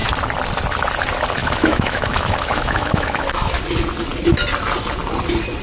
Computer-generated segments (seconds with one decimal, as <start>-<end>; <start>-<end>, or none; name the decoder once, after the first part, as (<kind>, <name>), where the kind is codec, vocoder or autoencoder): 1.4-3.6 (autoencoder, DAC-VAE)